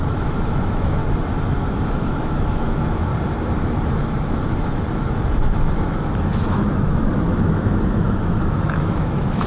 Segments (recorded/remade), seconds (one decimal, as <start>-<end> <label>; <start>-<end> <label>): 0.0-1.0 remade; 1.0-1.7 recorded; 1.7-3.1 remade; 3.1-3.6 recorded; 3.6-9.5 remade